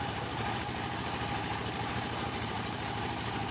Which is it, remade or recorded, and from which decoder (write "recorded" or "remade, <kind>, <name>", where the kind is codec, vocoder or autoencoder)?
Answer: remade, vocoder, BigVGAN v2